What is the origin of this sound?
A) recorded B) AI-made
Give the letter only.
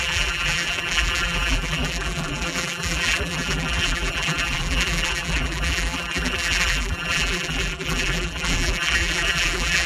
B